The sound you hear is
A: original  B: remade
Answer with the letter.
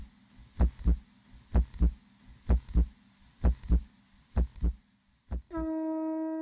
A